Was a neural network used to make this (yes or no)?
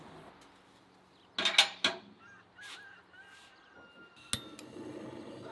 no